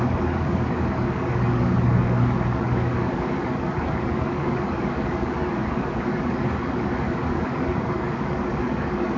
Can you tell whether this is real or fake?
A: fake